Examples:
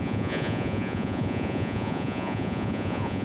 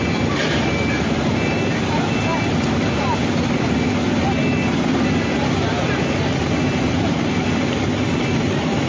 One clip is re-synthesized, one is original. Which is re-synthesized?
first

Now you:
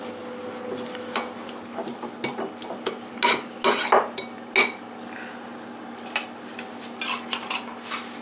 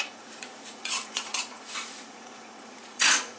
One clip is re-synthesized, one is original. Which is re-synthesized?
second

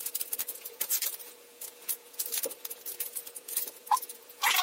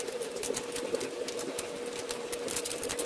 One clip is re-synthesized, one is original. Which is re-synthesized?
first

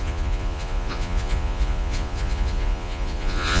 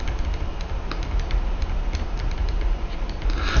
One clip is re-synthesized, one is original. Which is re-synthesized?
first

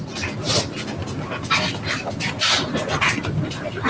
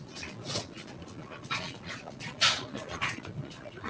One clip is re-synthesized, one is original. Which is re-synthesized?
second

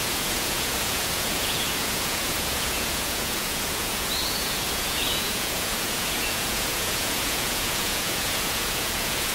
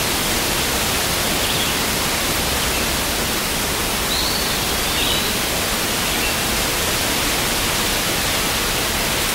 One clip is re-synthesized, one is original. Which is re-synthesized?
first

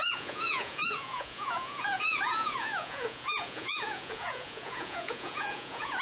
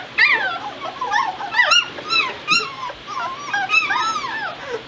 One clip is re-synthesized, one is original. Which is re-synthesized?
first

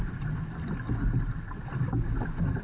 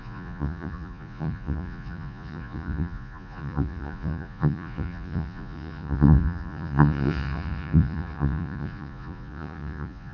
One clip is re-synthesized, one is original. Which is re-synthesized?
second